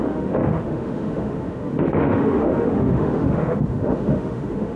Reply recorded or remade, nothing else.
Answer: remade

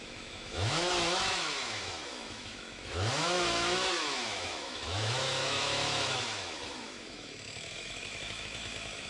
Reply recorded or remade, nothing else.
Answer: remade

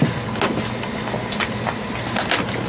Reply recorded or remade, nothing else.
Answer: recorded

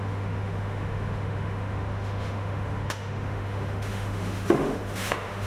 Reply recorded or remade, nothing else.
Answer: remade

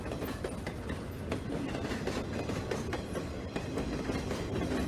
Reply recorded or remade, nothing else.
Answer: recorded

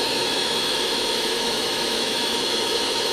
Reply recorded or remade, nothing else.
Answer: remade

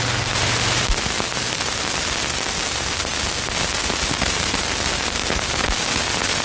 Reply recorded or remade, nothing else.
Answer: recorded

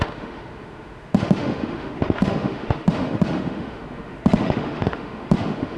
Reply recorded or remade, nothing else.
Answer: remade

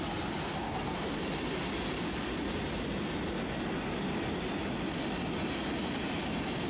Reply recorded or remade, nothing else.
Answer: recorded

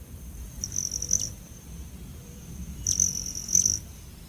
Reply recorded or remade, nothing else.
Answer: recorded